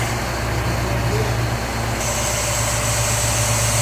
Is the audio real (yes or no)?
yes